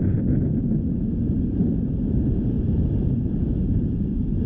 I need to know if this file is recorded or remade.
recorded